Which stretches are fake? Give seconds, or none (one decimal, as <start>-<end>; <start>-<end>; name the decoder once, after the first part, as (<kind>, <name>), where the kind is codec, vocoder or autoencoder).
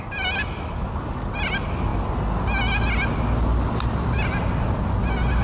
none